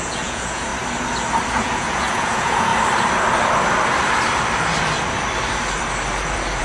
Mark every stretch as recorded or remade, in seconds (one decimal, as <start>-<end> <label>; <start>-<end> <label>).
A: 0.0-0.7 remade; 0.7-1.5 recorded; 1.5-2.7 remade; 2.7-6.6 recorded